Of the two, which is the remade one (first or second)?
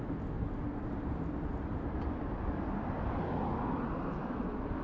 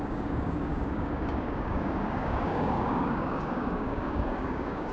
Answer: second